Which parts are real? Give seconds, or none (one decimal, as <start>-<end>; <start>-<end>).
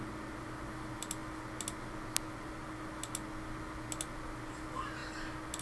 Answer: 0.0-5.6